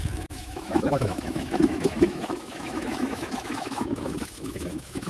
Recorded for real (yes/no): no